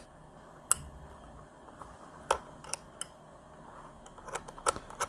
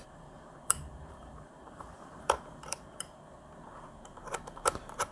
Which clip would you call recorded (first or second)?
first